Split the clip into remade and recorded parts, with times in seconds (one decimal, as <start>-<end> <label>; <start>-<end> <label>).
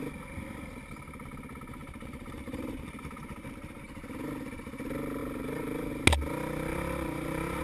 0.0-1.8 recorded; 1.8-3.9 remade; 3.9-5.2 recorded; 5.2-5.9 remade; 5.9-6.7 recorded; 6.7-7.6 remade